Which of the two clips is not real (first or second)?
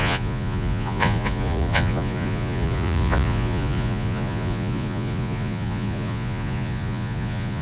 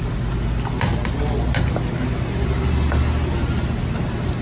first